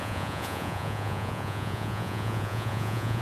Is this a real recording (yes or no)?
no